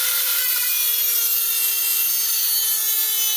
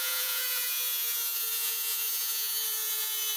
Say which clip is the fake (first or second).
second